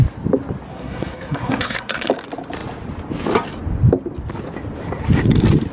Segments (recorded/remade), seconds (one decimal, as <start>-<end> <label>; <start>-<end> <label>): 0.0-0.7 recorded; 0.7-2.1 remade; 2.1-5.7 recorded